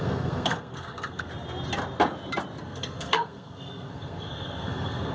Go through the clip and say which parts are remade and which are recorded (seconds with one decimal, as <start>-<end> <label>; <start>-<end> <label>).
0.0-1.3 remade; 1.3-2.6 recorded; 2.6-5.1 remade